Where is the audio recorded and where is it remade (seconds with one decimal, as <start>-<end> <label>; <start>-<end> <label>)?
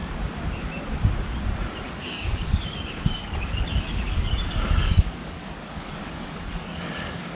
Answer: 0.0-1.9 recorded; 1.9-7.4 remade